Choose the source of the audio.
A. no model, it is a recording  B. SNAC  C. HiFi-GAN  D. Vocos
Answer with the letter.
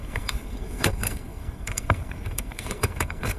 B